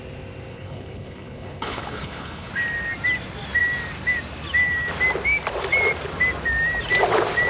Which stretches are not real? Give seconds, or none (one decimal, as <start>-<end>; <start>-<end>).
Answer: 0.5-2.5